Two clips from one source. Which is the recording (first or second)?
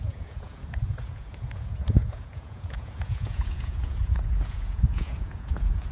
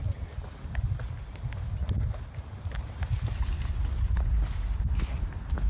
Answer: second